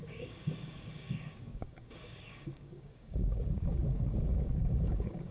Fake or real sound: fake